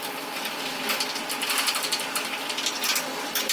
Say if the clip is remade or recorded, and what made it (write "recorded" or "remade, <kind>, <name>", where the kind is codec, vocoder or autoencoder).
remade, vocoder, BigVGAN v2